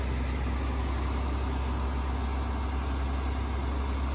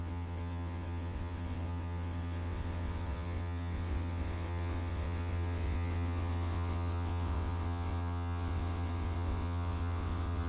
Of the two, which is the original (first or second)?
first